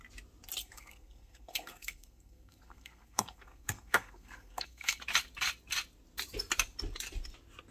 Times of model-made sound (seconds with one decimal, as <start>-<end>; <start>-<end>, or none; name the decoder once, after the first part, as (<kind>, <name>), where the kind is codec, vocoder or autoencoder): 0.6-5.0 (codec, SNAC)